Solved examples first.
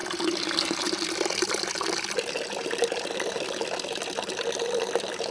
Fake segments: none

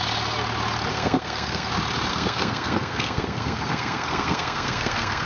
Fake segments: 0.9-1.7 (codec, SNAC); 2.1-5.3

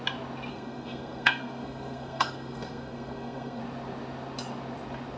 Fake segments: 0.5-3.6 (codec, SNAC)

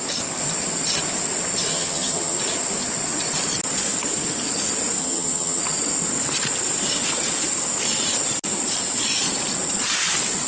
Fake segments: 1.7-2.4 (vocoder, HiFi-GAN); 5.0-5.6